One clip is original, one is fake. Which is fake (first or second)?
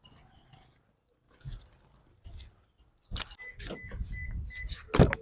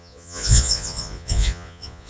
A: second